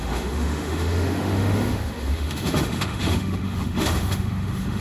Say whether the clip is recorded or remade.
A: remade